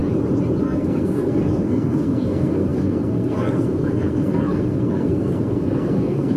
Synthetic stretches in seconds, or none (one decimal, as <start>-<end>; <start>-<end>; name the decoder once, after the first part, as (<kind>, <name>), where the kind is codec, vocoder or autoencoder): 0.6-6.4 (codec, SNAC)